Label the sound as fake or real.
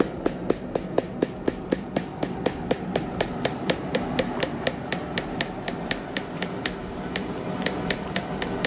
fake